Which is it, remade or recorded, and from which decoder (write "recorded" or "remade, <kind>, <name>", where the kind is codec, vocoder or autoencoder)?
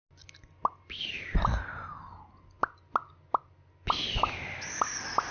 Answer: recorded